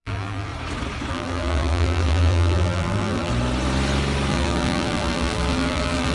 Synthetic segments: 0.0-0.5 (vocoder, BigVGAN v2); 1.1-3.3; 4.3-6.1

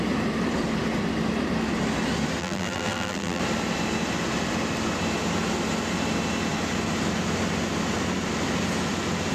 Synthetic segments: 2.4-3.4 (vocoder, BigVGAN v2)

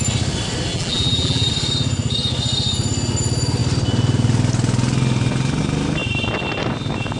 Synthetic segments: 0.7-1.5 (vocoder, BigVGAN v2)

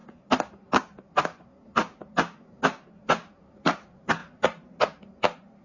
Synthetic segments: 3.4-5.6 (vocoder, BigVGAN v2)

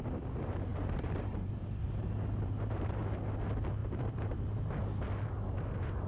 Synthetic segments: 0.7-3.0 (vocoder, BigVGAN v2); 3.8-4.4

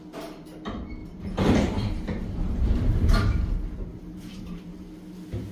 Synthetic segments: 1.0-3.0 (vocoder, BigVGAN v2); 3.9-4.6

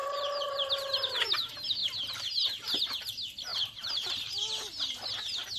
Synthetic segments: 0.0-0.7 (vocoder, BigVGAN v2); 3.5-4.3

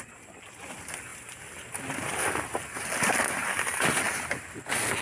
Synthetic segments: none